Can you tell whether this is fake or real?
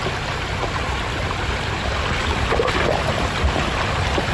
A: fake